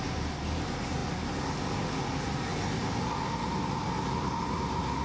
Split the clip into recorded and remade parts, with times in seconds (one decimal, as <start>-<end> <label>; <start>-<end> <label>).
0.0-5.0 recorded